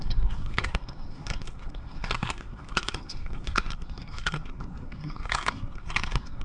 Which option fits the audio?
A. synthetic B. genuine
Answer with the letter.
A